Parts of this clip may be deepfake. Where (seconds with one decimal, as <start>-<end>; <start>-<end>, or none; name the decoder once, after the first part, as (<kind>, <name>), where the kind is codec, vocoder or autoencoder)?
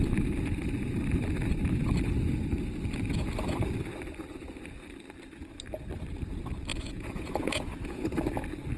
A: 6.7-8.3 (vocoder, Vocos)